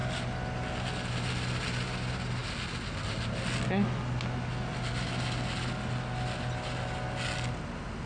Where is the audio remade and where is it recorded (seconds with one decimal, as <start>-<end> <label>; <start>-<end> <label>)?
0.0-8.1 recorded